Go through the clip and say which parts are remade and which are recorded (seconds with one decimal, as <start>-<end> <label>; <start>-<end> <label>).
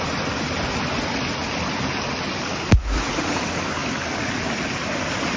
0.0-2.8 recorded; 2.8-3.4 remade; 3.4-5.4 recorded